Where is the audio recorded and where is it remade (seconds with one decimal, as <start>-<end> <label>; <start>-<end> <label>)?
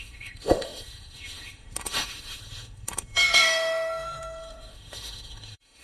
0.0-5.8 remade